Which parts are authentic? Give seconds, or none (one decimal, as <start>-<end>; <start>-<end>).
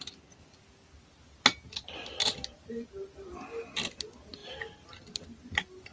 0.0-5.9